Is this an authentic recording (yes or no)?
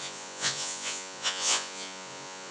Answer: no